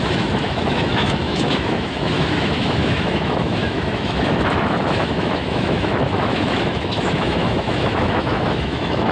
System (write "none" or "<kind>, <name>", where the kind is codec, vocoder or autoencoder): autoencoder, DAC-VAE